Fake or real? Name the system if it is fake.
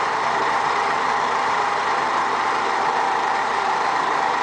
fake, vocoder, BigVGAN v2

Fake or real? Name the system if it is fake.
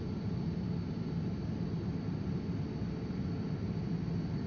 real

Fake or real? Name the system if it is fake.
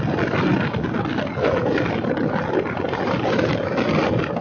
real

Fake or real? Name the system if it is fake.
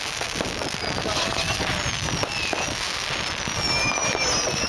real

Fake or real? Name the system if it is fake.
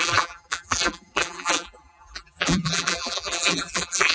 fake, vocoder, BigVGAN v2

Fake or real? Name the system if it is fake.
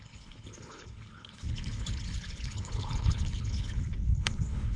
fake, codec, HILCodec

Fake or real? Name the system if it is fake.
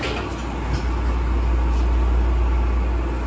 real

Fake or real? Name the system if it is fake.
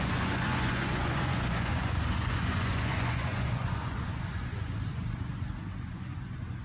fake, vocoder, Vocos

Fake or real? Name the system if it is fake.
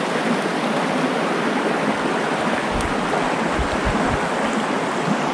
real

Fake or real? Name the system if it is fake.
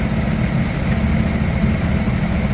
real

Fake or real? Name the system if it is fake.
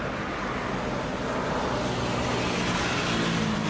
real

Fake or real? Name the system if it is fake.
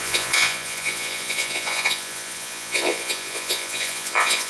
fake, vocoder, Vocos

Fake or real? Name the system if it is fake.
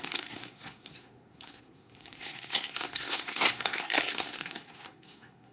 fake, codec, SNAC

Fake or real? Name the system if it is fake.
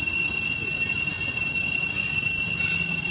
real